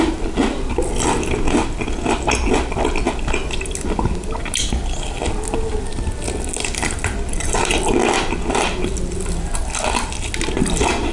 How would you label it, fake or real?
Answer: real